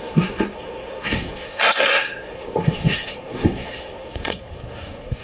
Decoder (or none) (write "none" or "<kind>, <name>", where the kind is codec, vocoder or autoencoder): codec, SNAC